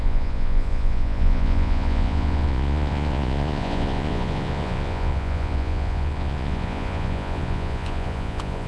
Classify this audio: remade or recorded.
remade